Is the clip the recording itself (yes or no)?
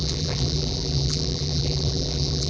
no